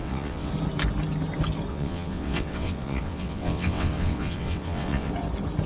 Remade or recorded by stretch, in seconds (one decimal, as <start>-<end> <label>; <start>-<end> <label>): 0.0-0.5 remade; 0.5-1.7 recorded; 1.7-5.1 remade; 5.1-5.7 recorded